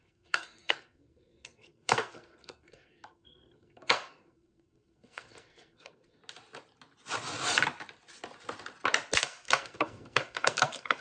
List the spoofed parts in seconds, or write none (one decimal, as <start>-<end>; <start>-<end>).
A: 0.0-6.2; 9.2-11.0